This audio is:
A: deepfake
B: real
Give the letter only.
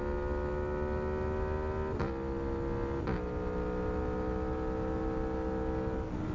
B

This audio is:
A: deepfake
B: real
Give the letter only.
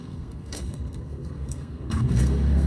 A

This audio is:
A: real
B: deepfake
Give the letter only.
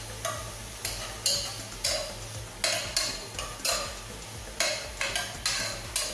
A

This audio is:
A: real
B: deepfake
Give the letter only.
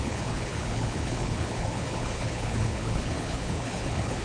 B